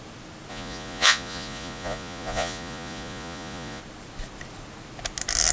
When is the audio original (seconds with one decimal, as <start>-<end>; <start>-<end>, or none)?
0.0-0.5; 3.8-5.5